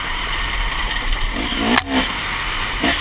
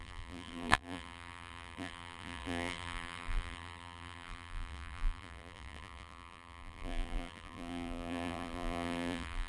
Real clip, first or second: first